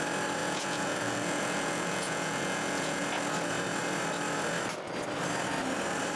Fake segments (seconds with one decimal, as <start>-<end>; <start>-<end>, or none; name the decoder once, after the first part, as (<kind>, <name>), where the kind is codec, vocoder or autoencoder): 0.4-3.0 (vocoder, Vocos)